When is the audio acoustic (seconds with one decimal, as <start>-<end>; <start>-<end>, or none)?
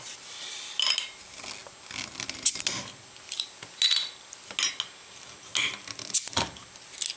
0.0-7.2